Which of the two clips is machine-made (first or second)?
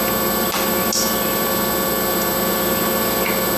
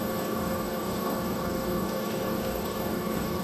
second